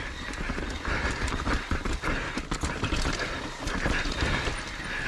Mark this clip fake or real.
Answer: real